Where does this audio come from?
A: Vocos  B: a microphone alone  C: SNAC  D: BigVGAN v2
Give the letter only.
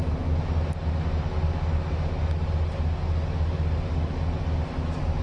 B